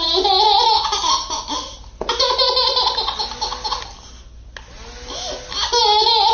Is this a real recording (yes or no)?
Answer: yes